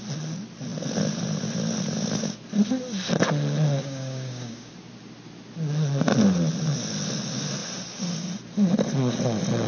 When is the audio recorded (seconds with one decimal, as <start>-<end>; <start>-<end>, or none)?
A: 0.0-3.8; 4.7-9.7